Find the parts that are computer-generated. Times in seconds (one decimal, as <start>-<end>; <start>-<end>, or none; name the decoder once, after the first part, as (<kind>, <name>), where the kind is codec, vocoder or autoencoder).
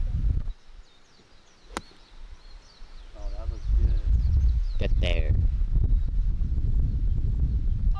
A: 0.0-1.2 (vocoder, BigVGAN v2); 6.0-8.0